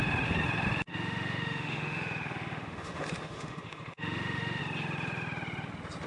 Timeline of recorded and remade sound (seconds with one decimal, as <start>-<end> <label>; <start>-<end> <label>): 0.0-0.9 recorded; 0.9-4.6 remade; 4.6-6.1 recorded